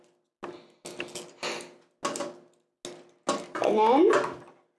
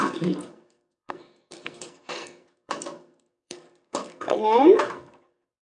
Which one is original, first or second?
first